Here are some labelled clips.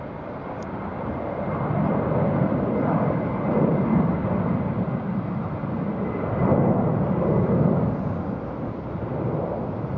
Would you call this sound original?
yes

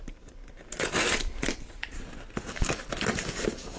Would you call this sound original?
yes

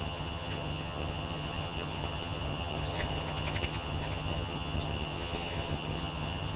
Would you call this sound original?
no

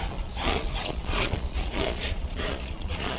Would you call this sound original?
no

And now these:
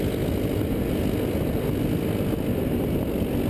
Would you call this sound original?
yes